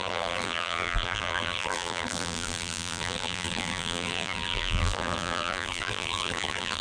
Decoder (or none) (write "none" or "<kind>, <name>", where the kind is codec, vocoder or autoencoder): vocoder, BigVGAN v2